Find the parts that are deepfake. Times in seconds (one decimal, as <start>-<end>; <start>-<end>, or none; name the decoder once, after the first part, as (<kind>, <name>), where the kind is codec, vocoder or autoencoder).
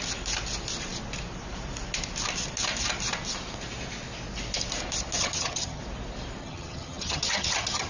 5.2-5.8 (vocoder, HiFi-GAN); 6.4-7.9